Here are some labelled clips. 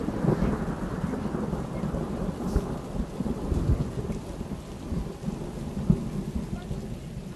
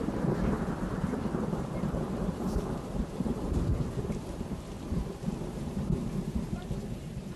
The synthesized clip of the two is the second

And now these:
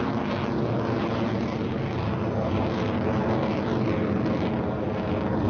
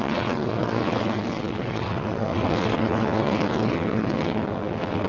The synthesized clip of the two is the second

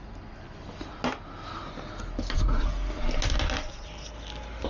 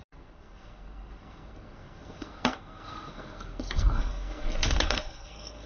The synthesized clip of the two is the second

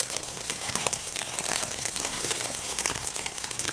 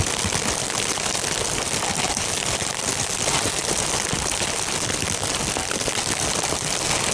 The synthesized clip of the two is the first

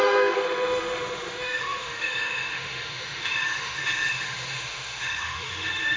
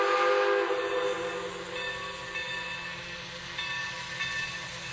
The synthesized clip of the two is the first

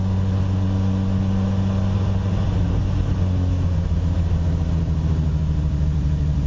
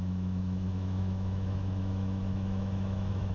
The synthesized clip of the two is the second